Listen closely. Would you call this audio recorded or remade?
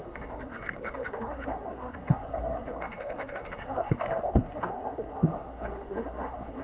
remade